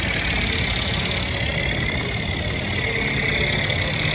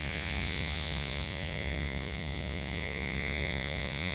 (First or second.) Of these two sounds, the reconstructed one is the second